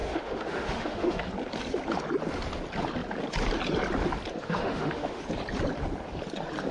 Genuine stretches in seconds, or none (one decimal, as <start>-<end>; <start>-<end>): 1.2-4.4; 5.2-6.7